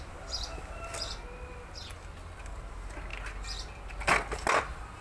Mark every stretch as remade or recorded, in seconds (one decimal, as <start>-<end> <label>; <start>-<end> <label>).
0.0-5.0 recorded